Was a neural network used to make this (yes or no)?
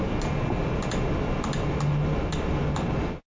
no